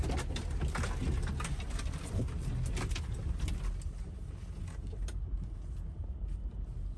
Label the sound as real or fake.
real